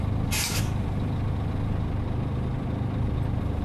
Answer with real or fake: real